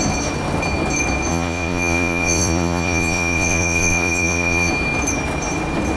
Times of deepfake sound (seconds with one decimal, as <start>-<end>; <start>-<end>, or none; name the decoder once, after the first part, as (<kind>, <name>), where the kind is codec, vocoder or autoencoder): 1.3-4.7 (vocoder, Vocos)